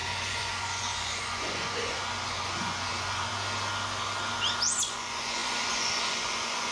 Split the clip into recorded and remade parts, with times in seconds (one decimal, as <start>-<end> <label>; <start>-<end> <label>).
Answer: 0.0-3.3 remade; 3.3-4.8 recorded; 4.8-6.7 remade